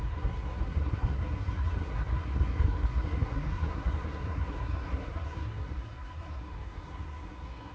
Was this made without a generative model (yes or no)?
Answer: no